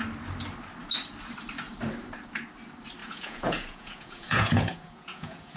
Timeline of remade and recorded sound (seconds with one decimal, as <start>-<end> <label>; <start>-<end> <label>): 0.0-3.0 recorded; 3.0-5.6 remade